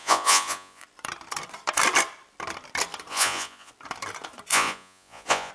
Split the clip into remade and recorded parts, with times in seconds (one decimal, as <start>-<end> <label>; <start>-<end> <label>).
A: 0.0-0.8 remade; 0.8-3.1 recorded; 3.1-3.7 remade; 3.7-4.5 recorded; 4.5-5.5 remade